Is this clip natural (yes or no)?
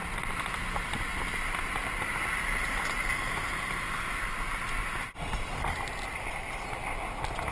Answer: yes